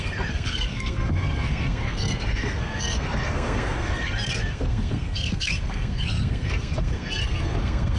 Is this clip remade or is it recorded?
remade